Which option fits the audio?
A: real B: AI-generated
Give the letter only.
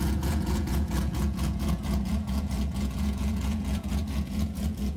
B